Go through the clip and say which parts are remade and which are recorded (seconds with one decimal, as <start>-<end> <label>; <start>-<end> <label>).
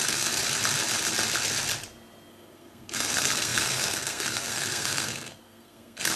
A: 0.0-0.4 remade; 0.4-2.3 recorded; 2.3-6.2 remade